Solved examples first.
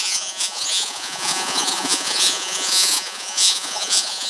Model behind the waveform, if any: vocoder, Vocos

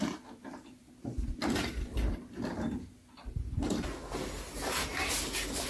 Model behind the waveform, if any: none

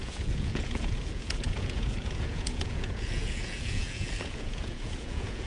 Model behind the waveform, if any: vocoder, Vocos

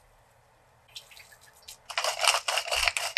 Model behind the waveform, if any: none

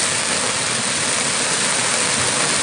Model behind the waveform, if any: none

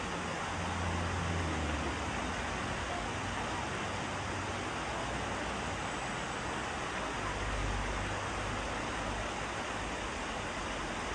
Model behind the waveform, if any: none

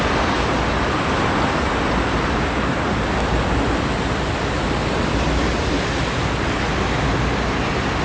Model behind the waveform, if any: none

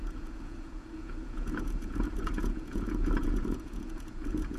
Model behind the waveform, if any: vocoder, Vocos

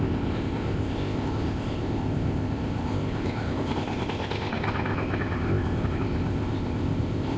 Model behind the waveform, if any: codec, ZipCodec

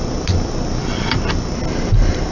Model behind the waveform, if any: none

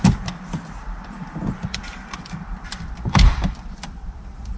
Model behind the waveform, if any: vocoder, BigVGAN v2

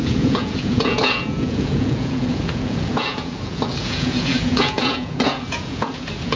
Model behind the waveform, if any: vocoder, Vocos